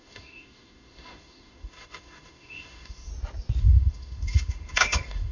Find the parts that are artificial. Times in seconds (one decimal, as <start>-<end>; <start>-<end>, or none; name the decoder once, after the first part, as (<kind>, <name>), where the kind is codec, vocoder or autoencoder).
0.0-3.1 (autoencoder, DAC-VAE); 3.6-5.3